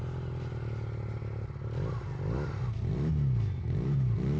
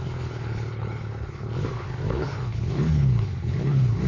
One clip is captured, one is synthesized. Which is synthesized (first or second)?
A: second